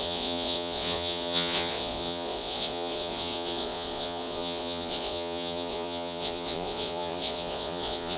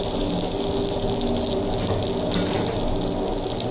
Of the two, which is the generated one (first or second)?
first